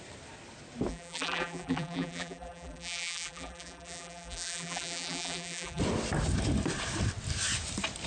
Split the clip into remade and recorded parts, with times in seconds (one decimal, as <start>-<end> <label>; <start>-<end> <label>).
0.0-0.9 recorded; 0.9-5.8 remade; 5.8-8.1 recorded